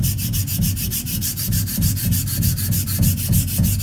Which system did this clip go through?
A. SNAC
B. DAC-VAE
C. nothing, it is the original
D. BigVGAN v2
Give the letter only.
C